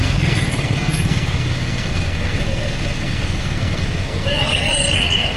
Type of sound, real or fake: fake